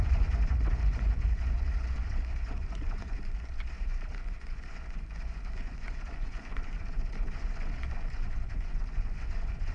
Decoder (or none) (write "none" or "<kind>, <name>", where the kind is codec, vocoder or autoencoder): vocoder, Vocos